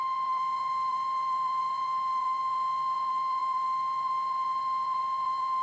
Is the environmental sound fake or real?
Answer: fake